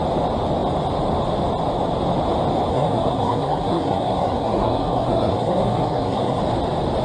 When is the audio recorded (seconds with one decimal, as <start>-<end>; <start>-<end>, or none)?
0.0-2.7; 6.4-7.0